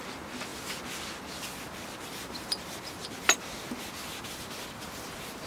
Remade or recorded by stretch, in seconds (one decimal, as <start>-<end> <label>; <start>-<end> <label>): 0.0-5.5 recorded

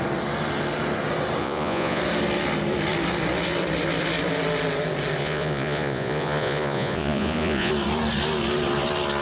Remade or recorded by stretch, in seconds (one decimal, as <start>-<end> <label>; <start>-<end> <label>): 0.0-1.4 recorded; 1.4-2.0 remade; 2.0-5.2 recorded; 5.2-7.7 remade; 7.7-9.2 recorded